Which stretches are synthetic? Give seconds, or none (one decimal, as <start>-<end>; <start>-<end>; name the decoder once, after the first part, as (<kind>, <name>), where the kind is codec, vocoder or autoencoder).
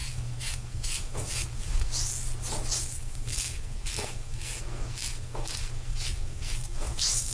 0.0-1.9 (codec, SNAC); 2.8-7.3